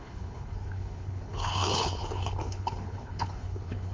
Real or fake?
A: fake